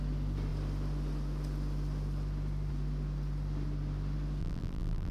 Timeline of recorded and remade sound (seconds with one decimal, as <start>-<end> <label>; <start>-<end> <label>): 0.0-4.4 recorded; 4.4-5.1 remade